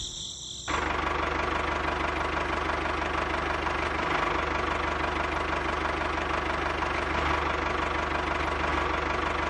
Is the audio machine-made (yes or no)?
no